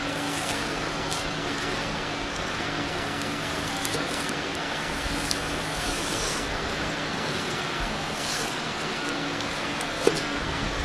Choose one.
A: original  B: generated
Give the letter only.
B